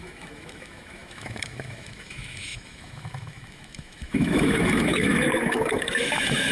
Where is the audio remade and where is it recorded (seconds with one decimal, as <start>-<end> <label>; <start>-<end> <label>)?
0.0-6.5 remade